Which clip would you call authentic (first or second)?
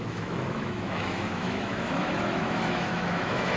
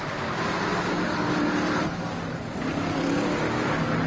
second